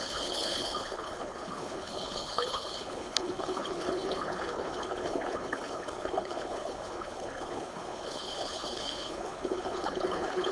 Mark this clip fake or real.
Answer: fake